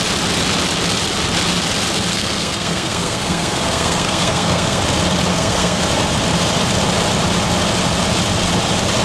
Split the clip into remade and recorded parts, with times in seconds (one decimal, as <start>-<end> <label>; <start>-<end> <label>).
0.0-2.1 recorded; 2.1-4.8 remade; 4.8-5.3 recorded; 5.3-5.8 remade; 5.8-9.0 recorded